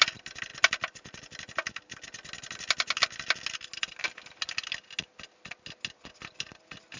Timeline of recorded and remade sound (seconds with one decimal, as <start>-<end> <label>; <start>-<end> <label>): 0.0-7.0 recorded